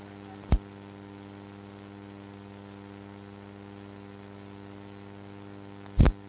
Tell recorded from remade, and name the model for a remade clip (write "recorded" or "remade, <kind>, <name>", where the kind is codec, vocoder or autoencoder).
recorded